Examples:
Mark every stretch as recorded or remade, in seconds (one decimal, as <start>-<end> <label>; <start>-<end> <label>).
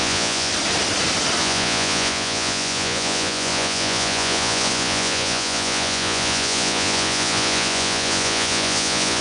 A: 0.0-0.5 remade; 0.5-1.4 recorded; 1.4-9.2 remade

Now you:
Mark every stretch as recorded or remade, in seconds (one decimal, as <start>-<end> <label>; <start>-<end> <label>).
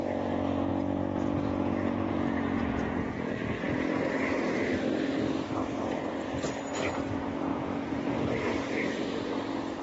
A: 0.0-0.7 recorded; 0.7-3.6 remade; 3.6-7.5 recorded; 7.5-8.1 remade; 8.1-9.8 recorded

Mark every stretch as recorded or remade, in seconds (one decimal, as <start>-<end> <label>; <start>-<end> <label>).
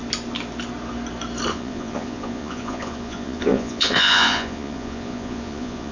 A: 0.0-1.5 recorded; 1.5-5.9 remade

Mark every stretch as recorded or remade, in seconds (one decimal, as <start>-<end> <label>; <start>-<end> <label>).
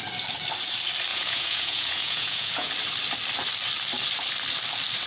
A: 0.0-1.1 recorded; 1.1-2.7 remade; 2.7-5.1 recorded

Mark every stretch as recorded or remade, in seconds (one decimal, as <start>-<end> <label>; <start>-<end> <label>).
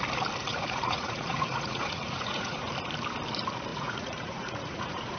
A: 0.0-0.5 recorded; 0.5-2.7 remade; 2.7-3.7 recorded; 3.7-5.2 remade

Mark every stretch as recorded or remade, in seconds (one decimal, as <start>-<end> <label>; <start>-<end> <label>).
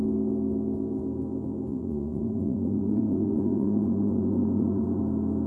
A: 0.0-1.7 recorded; 1.7-5.0 remade; 5.0-5.5 recorded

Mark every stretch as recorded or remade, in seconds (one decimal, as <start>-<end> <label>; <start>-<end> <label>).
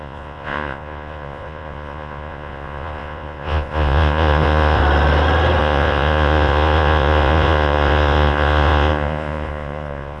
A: 0.0-4.8 remade; 4.8-5.6 recorded; 5.6-10.2 remade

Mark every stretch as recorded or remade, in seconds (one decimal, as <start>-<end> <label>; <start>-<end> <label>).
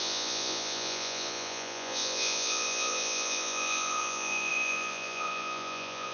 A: 0.0-6.1 remade